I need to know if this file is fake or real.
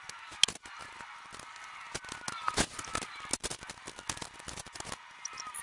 real